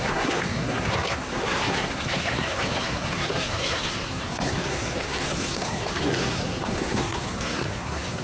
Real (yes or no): no